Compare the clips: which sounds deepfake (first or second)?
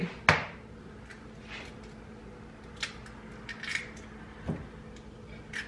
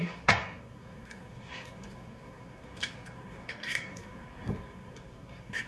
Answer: second